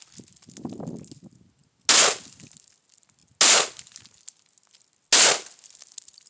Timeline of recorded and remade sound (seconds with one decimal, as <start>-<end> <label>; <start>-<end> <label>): 0.0-6.3 recorded